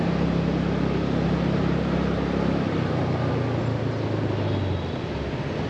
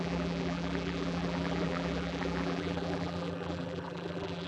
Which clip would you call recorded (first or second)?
first